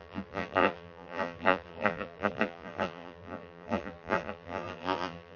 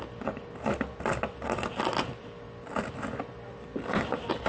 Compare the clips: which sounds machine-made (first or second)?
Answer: first